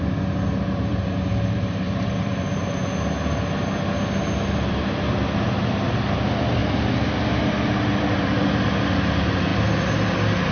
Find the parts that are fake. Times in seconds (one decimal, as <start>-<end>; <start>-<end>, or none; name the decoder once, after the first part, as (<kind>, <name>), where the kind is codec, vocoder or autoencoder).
0.9-2.9 (vocoder, BigVGAN v2)